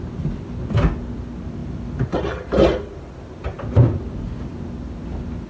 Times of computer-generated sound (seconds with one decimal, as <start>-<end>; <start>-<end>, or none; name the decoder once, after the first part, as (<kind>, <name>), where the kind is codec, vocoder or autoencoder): none